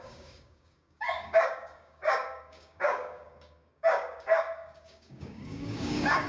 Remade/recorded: remade